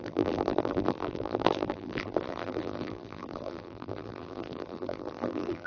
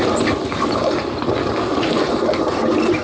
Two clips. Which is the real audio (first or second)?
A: second